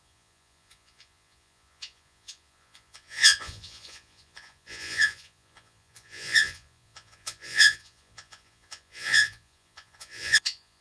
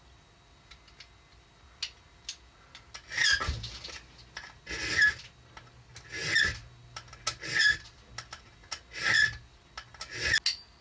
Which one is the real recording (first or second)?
second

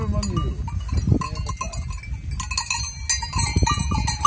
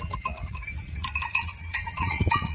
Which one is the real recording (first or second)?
first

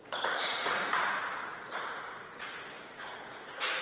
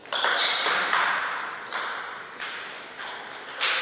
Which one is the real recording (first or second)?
second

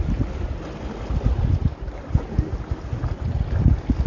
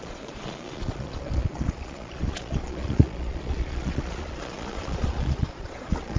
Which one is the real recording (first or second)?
first